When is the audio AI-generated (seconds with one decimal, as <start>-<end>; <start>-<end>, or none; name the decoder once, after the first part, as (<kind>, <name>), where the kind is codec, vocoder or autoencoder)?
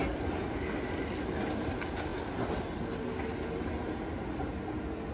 none